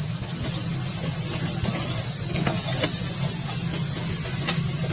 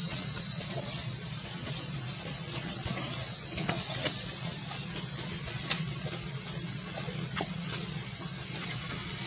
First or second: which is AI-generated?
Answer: second